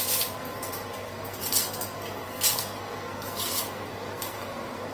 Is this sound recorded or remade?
remade